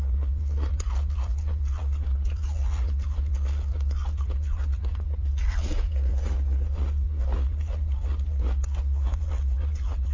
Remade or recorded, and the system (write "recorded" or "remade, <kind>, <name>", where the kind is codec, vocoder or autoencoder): remade, vocoder, Vocos